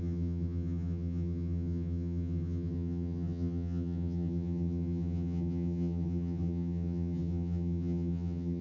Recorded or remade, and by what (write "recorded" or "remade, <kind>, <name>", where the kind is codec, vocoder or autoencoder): remade, vocoder, HiFi-GAN